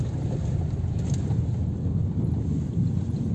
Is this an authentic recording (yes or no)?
yes